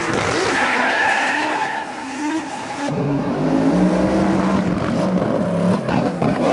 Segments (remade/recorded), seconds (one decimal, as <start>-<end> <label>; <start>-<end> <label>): 0.0-0.5 recorded; 0.5-3.3 remade; 3.3-5.9 recorded; 5.9-6.5 remade